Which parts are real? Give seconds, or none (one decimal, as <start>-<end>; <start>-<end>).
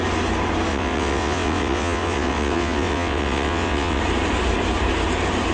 0.0-0.7; 4.0-5.5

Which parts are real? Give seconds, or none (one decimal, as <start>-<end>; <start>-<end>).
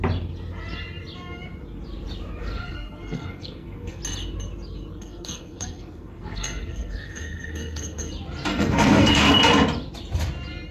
0.0-2.4; 4.0-4.9; 8.1-8.5; 9.3-10.7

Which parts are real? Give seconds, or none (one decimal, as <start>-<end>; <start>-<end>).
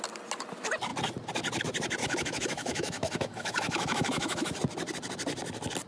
0.0-2.0; 4.6-5.9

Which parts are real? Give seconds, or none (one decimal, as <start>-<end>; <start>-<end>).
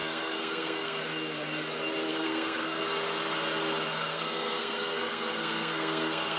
1.0-2.1; 2.8-4.1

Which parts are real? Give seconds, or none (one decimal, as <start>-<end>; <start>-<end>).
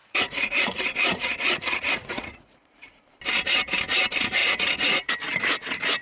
3.0-4.4; 5.1-6.0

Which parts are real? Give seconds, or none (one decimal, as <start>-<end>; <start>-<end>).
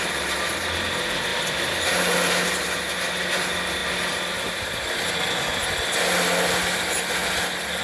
0.0-7.8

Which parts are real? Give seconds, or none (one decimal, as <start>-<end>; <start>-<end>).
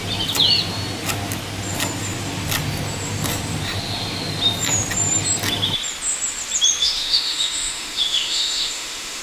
0.0-6.8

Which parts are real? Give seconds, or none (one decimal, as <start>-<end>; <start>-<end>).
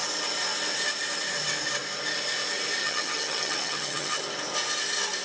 0.0-2.8; 4.2-5.2